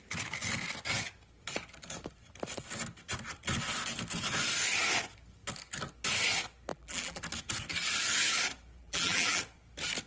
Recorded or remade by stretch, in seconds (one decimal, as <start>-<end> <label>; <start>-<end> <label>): 0.0-6.7 recorded; 6.7-7.2 remade; 7.2-8.8 recorded; 8.8-9.4 remade; 9.4-10.1 recorded